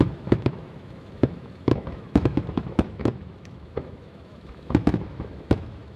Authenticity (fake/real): fake